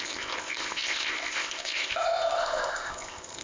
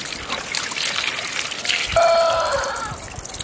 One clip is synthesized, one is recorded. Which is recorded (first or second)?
second